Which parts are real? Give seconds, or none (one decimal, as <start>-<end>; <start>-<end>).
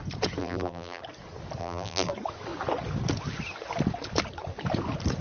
0.0-0.4; 1.0-1.6; 2.1-5.2